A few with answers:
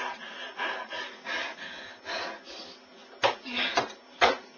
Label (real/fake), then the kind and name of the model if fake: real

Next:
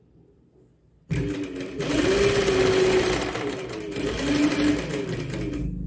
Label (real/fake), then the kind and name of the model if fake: real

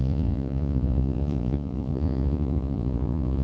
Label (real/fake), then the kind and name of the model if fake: fake, vocoder, Vocos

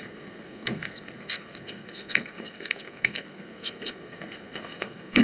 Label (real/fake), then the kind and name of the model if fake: fake, codec, SNAC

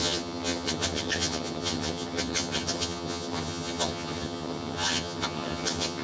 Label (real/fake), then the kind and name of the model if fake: fake, vocoder, HiFi-GAN